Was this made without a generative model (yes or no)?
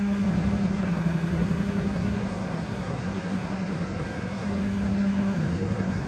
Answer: no